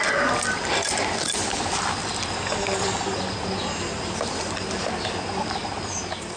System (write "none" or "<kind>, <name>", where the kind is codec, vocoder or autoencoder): none